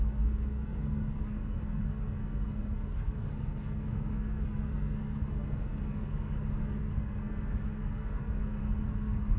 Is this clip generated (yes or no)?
yes